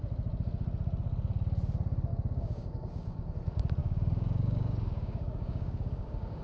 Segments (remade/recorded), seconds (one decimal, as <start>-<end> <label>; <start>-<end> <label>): 0.0-2.1 recorded; 2.1-3.3 remade; 3.3-3.8 recorded; 3.8-6.4 remade